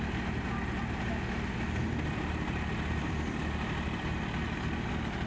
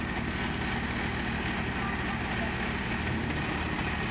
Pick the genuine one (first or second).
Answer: second